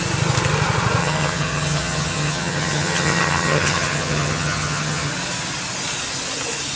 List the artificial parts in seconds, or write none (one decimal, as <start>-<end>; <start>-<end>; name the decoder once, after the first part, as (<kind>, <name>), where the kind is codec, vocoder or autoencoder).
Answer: 1.0-5.1 (vocoder, HiFi-GAN)